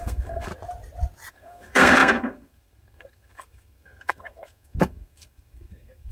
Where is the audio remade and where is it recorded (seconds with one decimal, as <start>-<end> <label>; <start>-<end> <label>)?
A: 0.0-0.5 remade; 0.5-1.3 recorded; 1.3-6.1 remade